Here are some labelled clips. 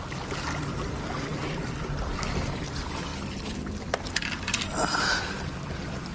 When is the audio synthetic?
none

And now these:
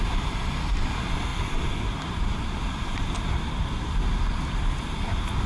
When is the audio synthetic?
1.3-3.8 (vocoder, BigVGAN v2)